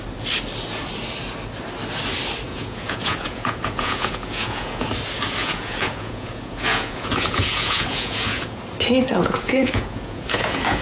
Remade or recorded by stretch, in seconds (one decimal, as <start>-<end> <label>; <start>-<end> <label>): 0.0-2.5 recorded; 2.5-4.9 remade; 4.9-5.4 recorded; 5.4-8.6 remade; 8.6-9.1 recorded; 9.1-10.8 remade

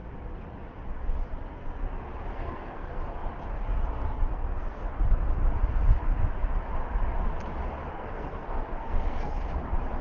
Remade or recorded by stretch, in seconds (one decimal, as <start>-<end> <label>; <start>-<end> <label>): 0.0-2.3 recorded; 2.3-3.0 remade; 3.0-4.3 recorded; 4.3-4.9 remade; 4.9-7.9 recorded; 7.9-9.5 remade; 9.5-10.0 recorded

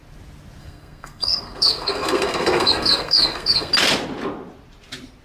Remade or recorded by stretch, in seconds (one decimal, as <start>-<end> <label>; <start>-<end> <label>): 0.0-0.6 recorded; 0.6-3.7 remade; 3.7-5.2 recorded